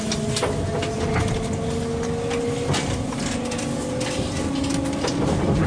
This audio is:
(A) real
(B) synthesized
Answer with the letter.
A